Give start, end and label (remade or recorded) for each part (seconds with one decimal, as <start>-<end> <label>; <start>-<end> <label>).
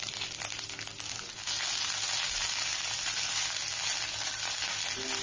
0.0-5.2 recorded